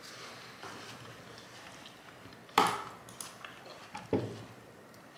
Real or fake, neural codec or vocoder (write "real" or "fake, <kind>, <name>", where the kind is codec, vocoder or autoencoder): real